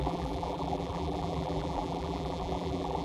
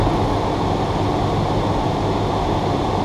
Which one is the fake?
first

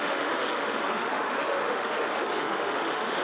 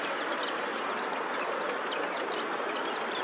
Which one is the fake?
first